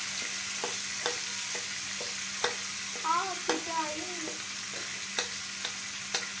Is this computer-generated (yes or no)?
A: no